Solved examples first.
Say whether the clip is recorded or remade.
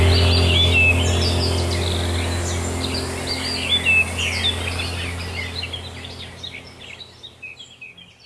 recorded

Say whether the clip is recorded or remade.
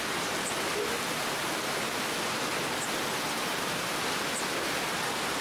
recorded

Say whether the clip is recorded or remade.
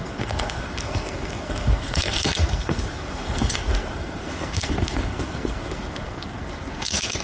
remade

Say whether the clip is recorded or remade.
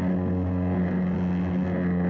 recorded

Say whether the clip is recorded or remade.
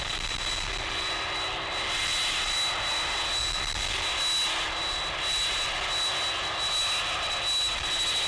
recorded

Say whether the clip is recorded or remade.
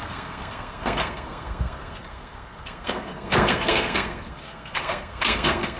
remade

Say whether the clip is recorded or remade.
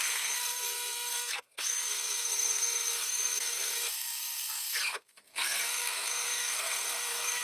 remade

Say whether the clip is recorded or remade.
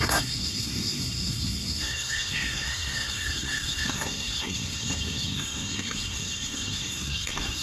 remade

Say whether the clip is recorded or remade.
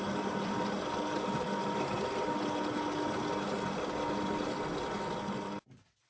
recorded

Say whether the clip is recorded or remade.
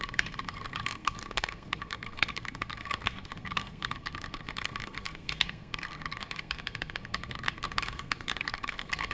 remade